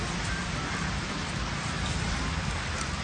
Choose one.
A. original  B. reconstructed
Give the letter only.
A